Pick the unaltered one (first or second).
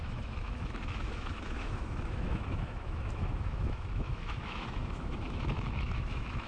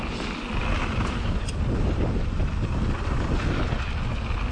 second